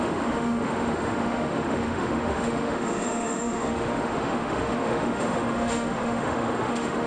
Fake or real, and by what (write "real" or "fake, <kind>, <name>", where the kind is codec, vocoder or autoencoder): fake, autoencoder, DAC-VAE